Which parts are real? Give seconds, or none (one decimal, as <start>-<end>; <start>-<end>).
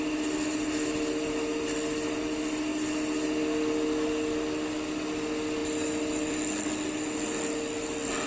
0.0-8.3